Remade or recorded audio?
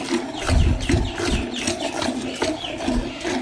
recorded